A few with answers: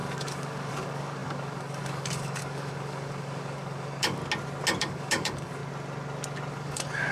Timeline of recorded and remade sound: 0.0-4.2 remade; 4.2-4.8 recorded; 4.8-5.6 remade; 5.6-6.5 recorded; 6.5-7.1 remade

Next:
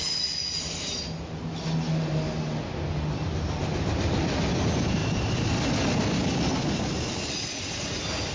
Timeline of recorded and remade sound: 0.0-8.3 recorded